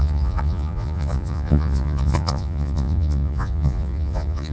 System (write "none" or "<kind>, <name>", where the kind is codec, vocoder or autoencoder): vocoder, Vocos